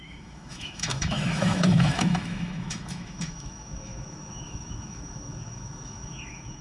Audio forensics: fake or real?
fake